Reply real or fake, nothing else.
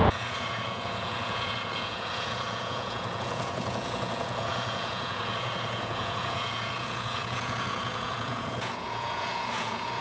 fake